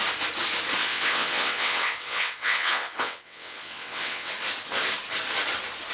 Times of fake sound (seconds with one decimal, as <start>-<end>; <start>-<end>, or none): 0.8-4.3